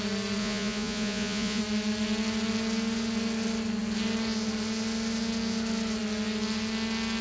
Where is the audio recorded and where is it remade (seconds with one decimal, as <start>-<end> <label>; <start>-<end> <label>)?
0.0-0.4 recorded; 0.4-1.6 remade; 1.6-7.2 recorded